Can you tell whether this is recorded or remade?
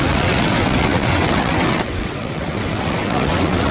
remade